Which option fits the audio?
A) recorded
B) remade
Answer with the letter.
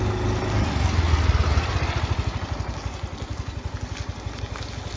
A